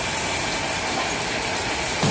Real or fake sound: real